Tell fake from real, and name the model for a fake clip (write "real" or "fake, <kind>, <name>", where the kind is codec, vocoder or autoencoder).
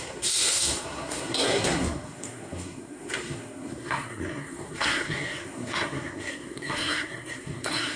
fake, codec, SNAC